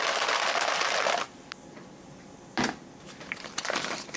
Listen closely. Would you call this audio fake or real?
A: real